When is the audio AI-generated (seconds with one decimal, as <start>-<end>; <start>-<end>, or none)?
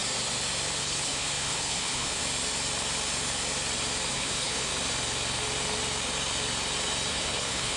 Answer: 0.8-2.2; 4.1-4.7; 7.1-7.8